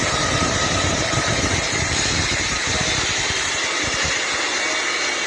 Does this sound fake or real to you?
real